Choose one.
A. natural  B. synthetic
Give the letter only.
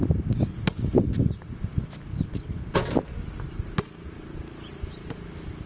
A